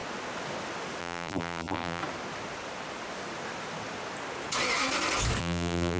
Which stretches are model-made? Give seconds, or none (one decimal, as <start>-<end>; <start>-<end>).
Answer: 1.0-2.0; 5.4-6.0